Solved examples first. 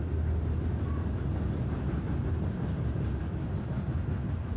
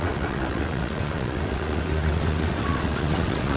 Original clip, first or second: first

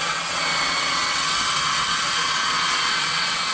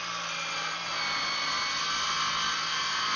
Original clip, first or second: second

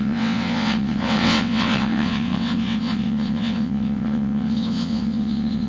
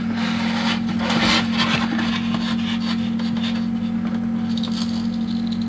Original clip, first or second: second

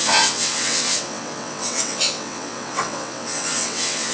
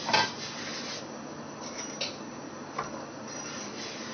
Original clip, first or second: second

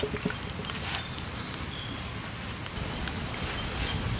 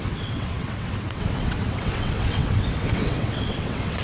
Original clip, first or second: first